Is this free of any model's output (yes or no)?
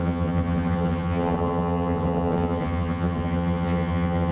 no